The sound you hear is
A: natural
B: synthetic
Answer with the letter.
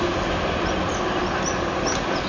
B